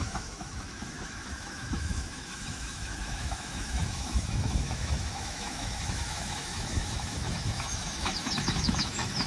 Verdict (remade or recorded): remade